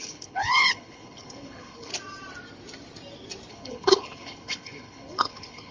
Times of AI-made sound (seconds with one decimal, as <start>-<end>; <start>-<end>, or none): 0.0-1.9; 3.5-5.7